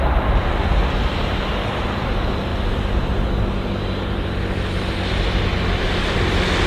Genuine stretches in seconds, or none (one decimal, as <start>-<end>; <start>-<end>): 0.0-6.7